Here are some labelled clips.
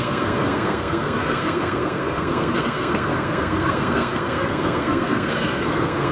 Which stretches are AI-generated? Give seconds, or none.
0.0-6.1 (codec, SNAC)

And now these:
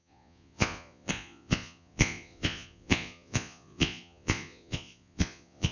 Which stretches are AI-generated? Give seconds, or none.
0.0-5.7 (vocoder, Vocos)

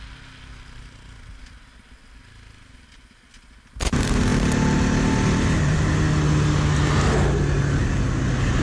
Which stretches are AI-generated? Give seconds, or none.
none

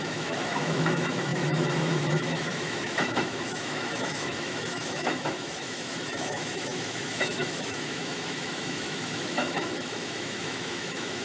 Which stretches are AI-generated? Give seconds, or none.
0.0-11.2 (autoencoder, DAC-VAE)

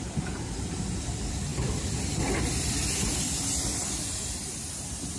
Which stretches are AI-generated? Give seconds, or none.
none

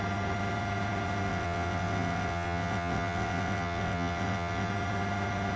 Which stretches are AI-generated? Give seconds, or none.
1.3-4.7 (vocoder, WaveNeXt)

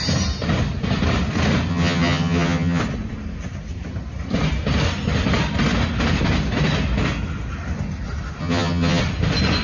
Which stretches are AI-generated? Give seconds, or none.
1.7-2.8 (vocoder, HiFi-GAN); 8.4-9.0

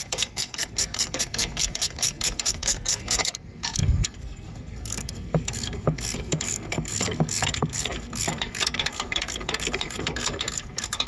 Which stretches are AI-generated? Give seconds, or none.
0.0-11.1 (codec, SNAC)